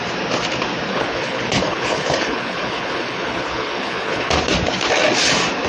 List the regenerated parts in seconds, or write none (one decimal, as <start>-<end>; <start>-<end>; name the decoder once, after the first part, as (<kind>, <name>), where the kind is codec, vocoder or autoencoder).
0.9-4.3 (codec, HILCodec)